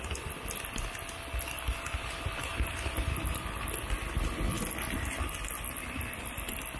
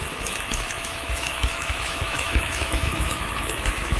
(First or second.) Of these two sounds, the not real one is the second